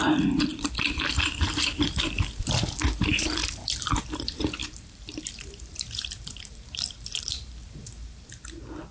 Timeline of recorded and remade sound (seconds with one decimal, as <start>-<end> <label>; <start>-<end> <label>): 0.0-0.5 recorded; 0.5-2.5 remade; 2.5-3.4 recorded; 3.4-4.0 remade; 4.0-4.6 recorded; 4.6-8.3 remade; 8.3-8.9 recorded